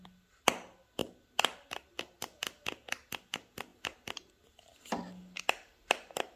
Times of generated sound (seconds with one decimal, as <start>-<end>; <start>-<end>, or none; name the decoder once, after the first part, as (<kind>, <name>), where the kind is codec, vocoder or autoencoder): 3.7-4.3 (vocoder, BigVGAN v2)